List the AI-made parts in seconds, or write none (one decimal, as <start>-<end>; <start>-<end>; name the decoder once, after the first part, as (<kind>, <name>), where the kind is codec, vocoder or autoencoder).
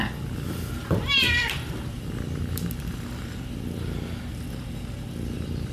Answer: 0.8-4.2 (vocoder, BigVGAN v2)